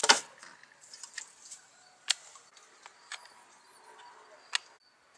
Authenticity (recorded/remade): recorded